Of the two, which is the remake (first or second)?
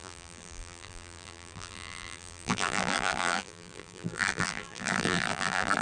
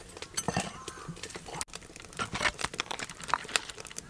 first